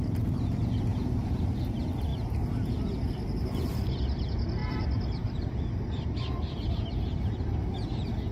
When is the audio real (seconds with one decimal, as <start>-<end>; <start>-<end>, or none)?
0.0-0.9; 1.5-4.6; 5.5-8.3